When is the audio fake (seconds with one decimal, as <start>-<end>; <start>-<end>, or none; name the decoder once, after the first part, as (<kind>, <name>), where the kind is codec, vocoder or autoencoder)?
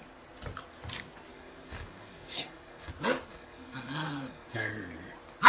1.3-2.9 (codec, DAC); 3.3-4.7